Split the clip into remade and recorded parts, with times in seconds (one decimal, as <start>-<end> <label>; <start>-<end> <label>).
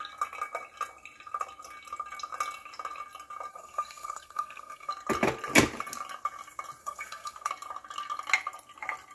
0.0-3.5 recorded; 3.5-4.9 remade; 4.9-6.8 recorded; 6.8-7.5 remade; 7.5-9.1 recorded